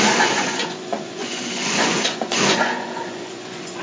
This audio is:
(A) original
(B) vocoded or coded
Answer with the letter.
B